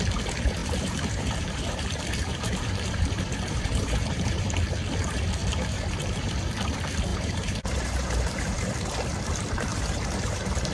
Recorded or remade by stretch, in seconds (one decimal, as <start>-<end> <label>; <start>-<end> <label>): 0.0-0.6 recorded; 0.6-4.4 remade; 4.4-5.4 recorded; 5.4-6.5 remade; 6.5-7.1 recorded; 7.1-8.6 remade; 8.6-9.7 recorded; 9.7-10.7 remade